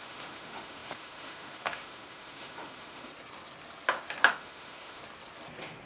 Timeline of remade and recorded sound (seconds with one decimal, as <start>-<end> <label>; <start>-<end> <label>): 0.0-3.1 remade; 3.1-4.3 recorded; 4.3-5.0 remade; 5.0-5.9 recorded